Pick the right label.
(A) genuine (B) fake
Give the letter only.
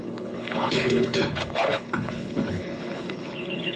B